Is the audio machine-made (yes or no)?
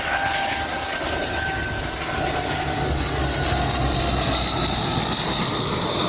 no